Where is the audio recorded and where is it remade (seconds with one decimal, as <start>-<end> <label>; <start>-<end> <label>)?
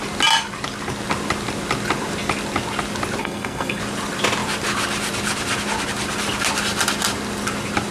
0.0-3.2 recorded; 3.2-3.8 remade; 3.8-7.9 recorded